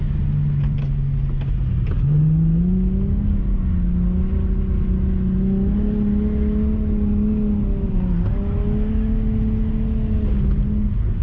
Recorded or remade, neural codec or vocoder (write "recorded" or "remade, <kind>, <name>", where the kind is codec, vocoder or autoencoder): recorded